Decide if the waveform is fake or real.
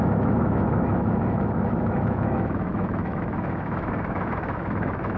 fake